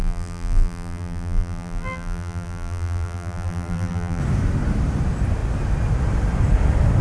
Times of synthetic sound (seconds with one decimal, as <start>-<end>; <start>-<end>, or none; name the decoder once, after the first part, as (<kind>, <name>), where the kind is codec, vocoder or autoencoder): 0.0-4.2 (vocoder, BigVGAN v2)